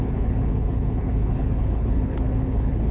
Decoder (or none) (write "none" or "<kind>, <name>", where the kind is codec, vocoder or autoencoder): codec, HILCodec